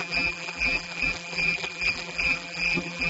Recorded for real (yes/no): no